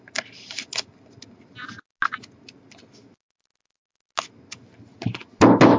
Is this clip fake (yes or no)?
no